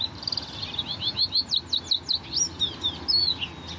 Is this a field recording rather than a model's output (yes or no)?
yes